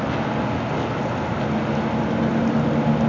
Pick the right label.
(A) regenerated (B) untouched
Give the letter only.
B